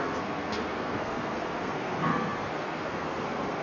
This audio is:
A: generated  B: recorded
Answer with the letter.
A